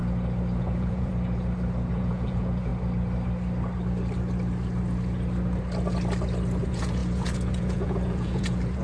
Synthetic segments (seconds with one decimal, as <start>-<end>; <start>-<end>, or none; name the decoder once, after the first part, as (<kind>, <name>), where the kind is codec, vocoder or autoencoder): 0.6-1.1 (vocoder, Vocos); 1.9-2.7; 6.6-8.8